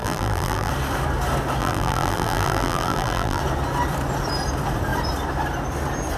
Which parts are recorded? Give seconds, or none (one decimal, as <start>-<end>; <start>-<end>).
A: 0.7-1.6; 3.4-6.2